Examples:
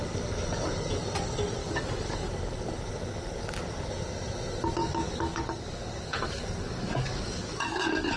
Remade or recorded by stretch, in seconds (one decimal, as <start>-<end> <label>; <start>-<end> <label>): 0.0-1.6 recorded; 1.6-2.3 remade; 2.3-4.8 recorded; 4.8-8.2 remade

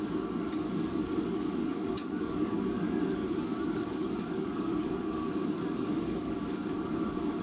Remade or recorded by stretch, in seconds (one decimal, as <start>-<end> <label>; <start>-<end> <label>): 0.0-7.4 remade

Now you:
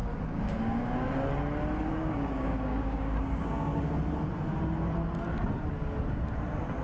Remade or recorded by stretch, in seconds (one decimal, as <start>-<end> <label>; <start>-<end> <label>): 0.0-1.1 remade; 1.1-1.9 recorded; 1.9-3.9 remade; 3.9-6.8 recorded